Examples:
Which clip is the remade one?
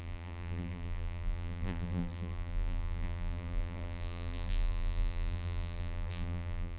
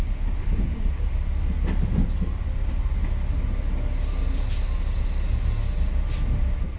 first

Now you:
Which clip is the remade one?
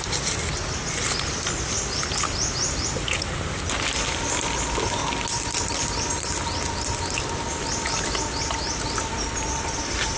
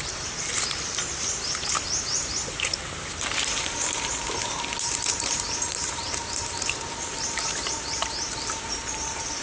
second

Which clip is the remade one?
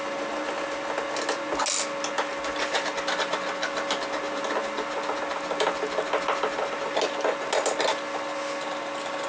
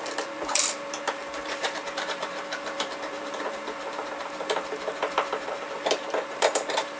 second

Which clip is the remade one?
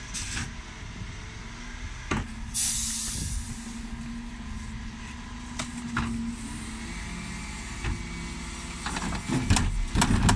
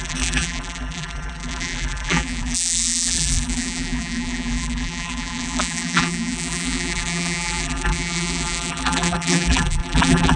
second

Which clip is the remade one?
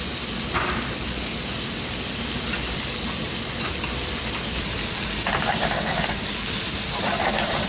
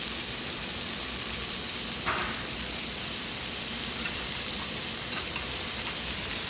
second